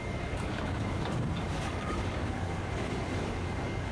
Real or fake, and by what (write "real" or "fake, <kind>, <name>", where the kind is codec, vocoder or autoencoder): fake, codec, DAC